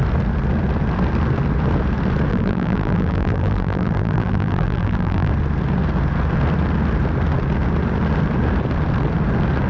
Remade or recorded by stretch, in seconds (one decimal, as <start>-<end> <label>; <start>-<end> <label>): 0.0-2.3 recorded; 2.3-5.3 remade; 5.3-9.7 recorded